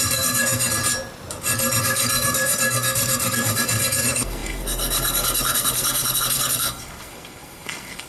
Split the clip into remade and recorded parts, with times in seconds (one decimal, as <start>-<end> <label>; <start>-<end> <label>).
0.0-0.8 remade; 0.8-1.8 recorded; 1.8-8.1 remade

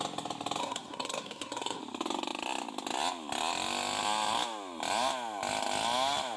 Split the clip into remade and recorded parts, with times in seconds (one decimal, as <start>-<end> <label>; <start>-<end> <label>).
0.0-0.6 recorded; 0.6-1.8 remade; 1.8-6.4 recorded

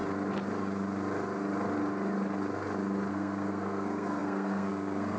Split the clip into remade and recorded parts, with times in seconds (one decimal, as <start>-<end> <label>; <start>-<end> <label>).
0.0-3.1 recorded; 3.1-5.2 remade